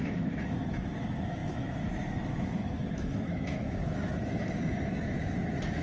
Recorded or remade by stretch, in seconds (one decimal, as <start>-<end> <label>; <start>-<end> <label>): 0.0-5.8 remade